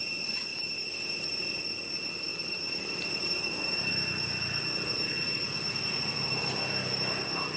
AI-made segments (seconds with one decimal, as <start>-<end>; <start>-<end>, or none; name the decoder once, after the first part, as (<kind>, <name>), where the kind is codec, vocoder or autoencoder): 0.5-1.5 (vocoder, BigVGAN v2); 2.3-3.9